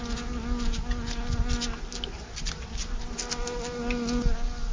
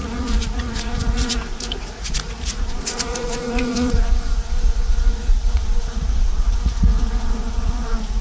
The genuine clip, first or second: first